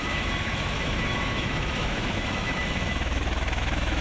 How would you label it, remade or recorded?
remade